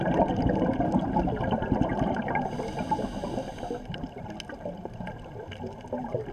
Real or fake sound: real